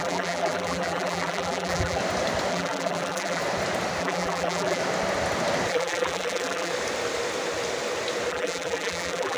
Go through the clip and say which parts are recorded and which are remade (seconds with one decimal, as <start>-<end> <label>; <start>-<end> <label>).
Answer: 0.0-2.0 remade; 2.0-2.5 recorded; 2.5-3.4 remade; 3.4-4.0 recorded; 4.0-4.8 remade; 4.8-5.7 recorded; 5.7-6.7 remade; 6.7-8.3 recorded; 8.3-9.4 remade